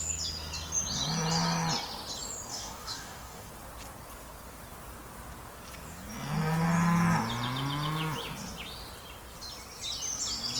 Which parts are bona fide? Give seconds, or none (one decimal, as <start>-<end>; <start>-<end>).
0.0-2.5; 3.5-10.6